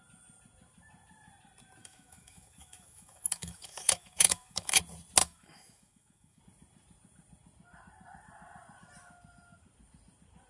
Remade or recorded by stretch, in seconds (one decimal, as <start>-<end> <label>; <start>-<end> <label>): 0.0-1.8 recorded; 1.8-4.8 remade; 4.8-5.2 recorded; 5.2-6.4 remade; 6.4-10.5 recorded